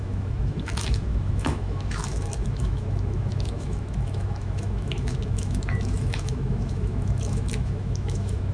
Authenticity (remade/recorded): remade